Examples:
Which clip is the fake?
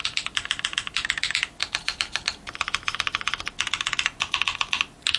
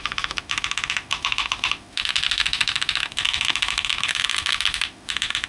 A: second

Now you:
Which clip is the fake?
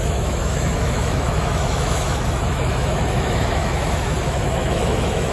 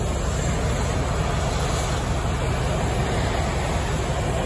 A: first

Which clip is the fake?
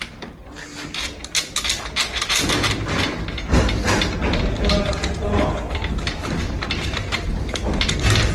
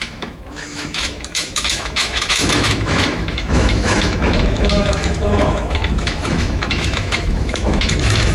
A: second